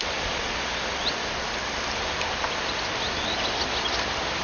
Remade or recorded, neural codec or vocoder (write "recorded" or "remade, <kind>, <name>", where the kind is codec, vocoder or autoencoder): recorded